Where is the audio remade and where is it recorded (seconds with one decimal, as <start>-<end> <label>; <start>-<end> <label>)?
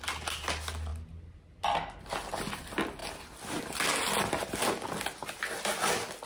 0.0-6.3 recorded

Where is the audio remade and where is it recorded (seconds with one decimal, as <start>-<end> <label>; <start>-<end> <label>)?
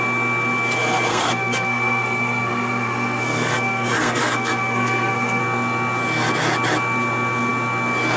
0.0-1.1 recorded; 1.1-5.4 remade; 5.4-8.2 recorded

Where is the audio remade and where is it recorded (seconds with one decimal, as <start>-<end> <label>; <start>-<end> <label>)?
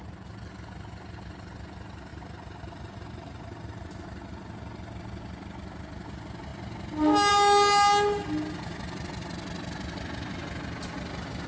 0.0-11.5 recorded